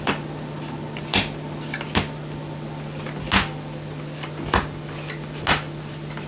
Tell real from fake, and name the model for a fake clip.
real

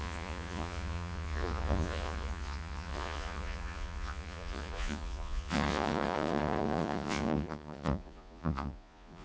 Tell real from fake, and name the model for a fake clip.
fake, vocoder, Vocos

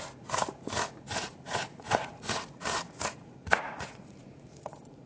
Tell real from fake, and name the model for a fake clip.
fake, vocoder, Vocos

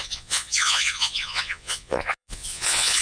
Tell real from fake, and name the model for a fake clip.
fake, vocoder, Vocos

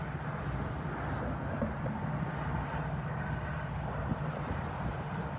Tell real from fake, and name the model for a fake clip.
real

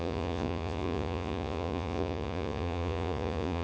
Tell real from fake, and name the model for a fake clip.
fake, vocoder, Vocos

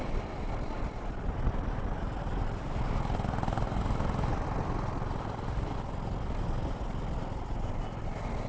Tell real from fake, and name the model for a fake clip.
real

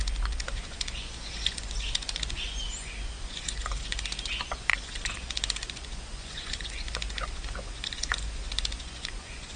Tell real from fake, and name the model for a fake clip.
fake, vocoder, Vocos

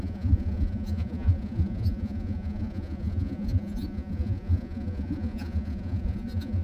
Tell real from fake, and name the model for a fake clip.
fake, vocoder, Vocos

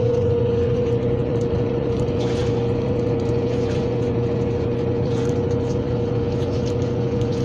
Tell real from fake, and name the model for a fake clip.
fake, vocoder, Vocos